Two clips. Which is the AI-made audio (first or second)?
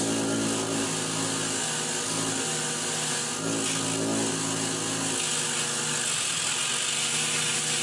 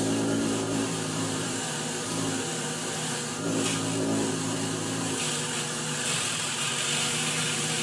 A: second